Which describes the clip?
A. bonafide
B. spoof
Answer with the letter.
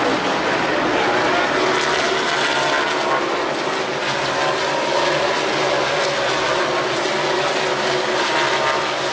A